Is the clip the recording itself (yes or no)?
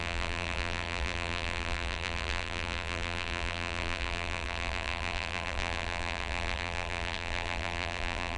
no